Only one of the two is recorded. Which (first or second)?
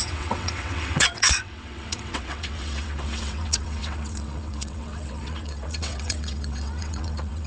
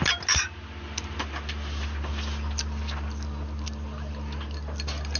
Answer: second